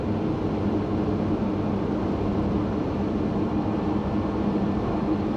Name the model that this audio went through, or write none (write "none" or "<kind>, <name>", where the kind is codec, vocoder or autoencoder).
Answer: none